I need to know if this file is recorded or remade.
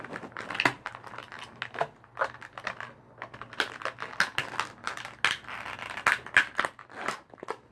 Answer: recorded